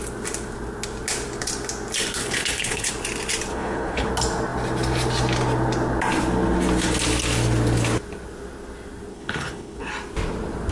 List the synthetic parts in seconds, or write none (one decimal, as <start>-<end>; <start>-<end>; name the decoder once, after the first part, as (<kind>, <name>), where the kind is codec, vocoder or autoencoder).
2.2-2.9 (codec, HILCodec); 3.5-4.1; 9.1-9.9